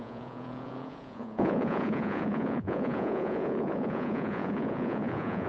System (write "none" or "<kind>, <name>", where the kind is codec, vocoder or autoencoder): vocoder, Vocos